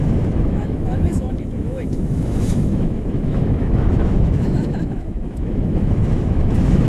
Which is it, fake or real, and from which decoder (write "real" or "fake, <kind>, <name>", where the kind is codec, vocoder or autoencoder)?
fake, autoencoder, DAC-VAE